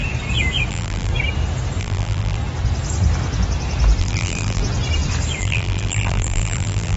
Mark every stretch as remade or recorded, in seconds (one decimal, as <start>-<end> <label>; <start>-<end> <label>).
0.0-0.7 recorded; 0.7-1.1 remade; 1.1-1.8 recorded; 1.8-2.4 remade; 2.4-4.0 recorded; 4.0-4.6 remade; 4.6-5.4 recorded; 5.4-7.0 remade